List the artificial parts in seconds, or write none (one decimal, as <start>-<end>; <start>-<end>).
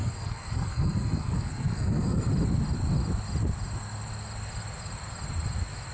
0.0-2.3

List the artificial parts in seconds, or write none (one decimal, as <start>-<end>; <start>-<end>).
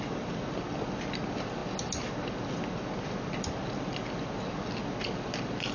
none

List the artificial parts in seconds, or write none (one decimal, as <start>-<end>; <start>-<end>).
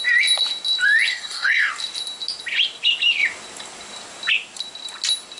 1.1-1.7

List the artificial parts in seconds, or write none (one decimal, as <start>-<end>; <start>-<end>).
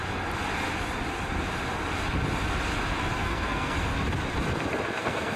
3.2-3.9; 5.0-5.4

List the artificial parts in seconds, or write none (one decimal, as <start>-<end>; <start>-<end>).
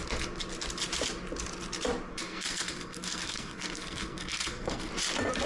2.1-4.9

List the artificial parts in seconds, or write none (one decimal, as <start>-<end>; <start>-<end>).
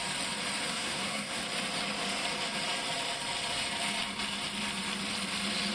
0.7-1.4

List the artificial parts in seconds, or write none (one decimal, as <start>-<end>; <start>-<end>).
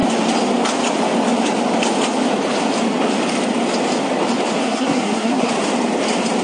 4.6-5.5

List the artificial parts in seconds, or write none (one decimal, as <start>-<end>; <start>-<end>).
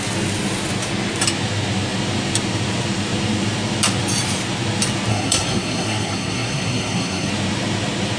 5.1-7.3